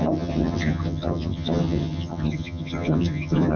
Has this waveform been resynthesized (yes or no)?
yes